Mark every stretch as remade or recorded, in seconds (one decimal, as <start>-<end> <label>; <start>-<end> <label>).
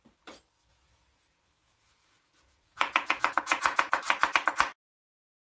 0.0-0.7 recorded; 0.7-4.0 remade; 4.0-5.5 recorded